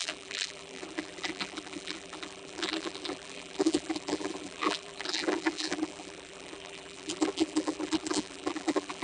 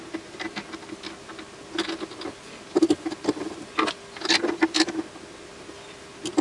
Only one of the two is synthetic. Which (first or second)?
first